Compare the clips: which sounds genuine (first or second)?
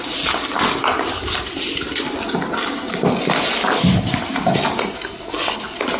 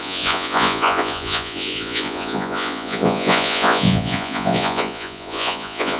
first